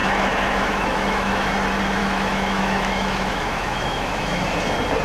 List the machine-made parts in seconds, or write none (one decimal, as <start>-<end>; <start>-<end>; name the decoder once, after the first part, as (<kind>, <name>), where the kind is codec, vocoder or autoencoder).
0.0-1.5 (autoencoder, DAC-VAE); 2.0-4.4